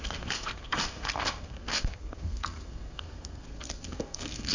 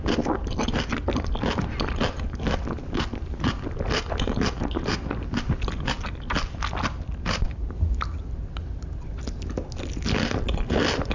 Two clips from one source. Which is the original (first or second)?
second